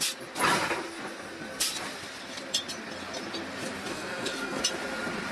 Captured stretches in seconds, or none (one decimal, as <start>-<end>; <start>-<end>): 0.0-3.9; 4.6-5.3